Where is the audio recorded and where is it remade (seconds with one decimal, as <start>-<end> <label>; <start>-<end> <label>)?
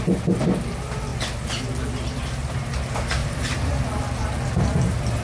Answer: 0.0-3.2 recorded; 3.2-3.7 remade; 3.7-5.2 recorded